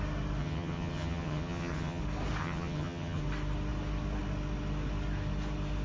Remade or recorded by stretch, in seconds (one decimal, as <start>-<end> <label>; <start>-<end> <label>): 0.0-0.4 recorded; 0.4-2.0 remade; 2.0-2.4 recorded; 2.4-3.2 remade; 3.2-5.8 recorded